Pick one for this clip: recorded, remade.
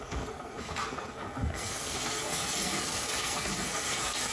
remade